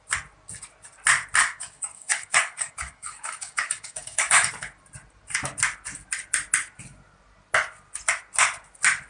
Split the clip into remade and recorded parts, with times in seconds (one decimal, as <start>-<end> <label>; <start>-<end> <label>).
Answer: 0.0-1.4 recorded; 1.4-4.5 remade; 4.5-9.1 recorded